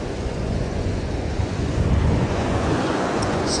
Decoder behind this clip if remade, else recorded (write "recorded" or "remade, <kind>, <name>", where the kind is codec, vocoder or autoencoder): remade, vocoder, Vocos